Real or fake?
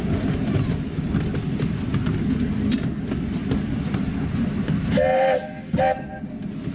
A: real